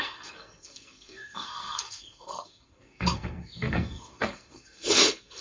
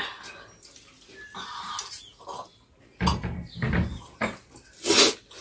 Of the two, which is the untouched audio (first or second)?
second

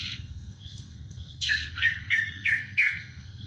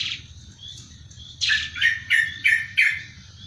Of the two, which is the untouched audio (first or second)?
second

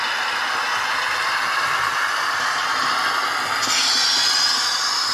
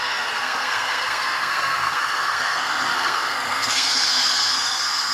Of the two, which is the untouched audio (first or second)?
first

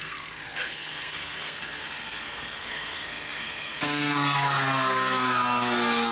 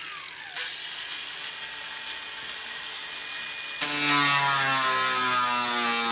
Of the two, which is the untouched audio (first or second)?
second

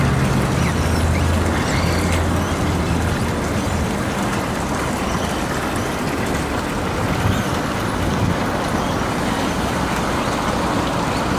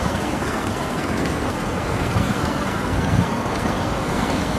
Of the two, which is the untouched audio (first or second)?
first